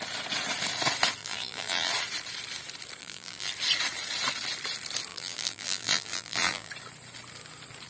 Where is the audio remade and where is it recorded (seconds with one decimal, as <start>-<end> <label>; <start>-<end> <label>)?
0.0-1.2 recorded; 1.2-1.9 remade; 1.9-3.0 recorded; 3.0-3.5 remade; 3.5-5.1 recorded; 5.1-6.7 remade; 6.7-7.9 recorded